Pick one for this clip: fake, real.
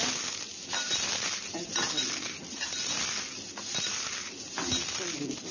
real